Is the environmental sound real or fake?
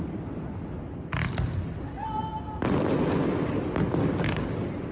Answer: real